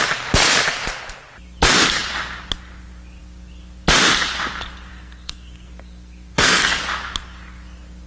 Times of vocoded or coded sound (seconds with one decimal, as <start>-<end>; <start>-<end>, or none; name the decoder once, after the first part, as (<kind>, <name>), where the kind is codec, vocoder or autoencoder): 4.9-6.8 (codec, SNAC)